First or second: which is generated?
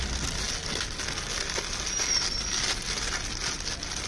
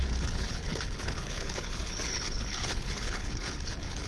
second